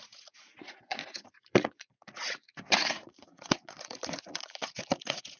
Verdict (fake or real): fake